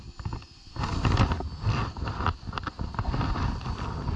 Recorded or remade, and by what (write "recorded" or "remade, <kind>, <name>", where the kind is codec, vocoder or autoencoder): recorded